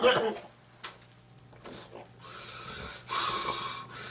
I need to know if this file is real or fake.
real